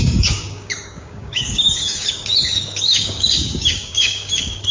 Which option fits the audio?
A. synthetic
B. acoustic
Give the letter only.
A